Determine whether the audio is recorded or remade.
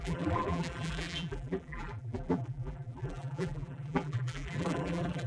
remade